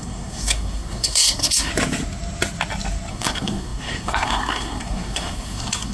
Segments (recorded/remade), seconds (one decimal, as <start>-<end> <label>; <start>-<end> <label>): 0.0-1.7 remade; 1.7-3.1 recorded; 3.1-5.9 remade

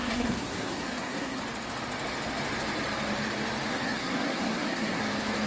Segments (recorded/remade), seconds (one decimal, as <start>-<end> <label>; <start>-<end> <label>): 0.0-1.4 remade; 1.4-3.7 recorded; 3.7-5.0 remade; 5.0-5.5 recorded

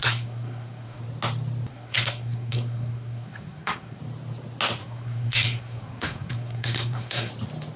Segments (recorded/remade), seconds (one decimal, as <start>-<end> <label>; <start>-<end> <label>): 0.0-1.0 remade; 1.0-1.7 recorded; 1.7-4.0 remade; 4.0-4.8 recorded; 4.8-7.3 remade; 7.3-7.8 recorded